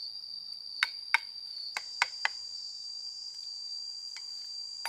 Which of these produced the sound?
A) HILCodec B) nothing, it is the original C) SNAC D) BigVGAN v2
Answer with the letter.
B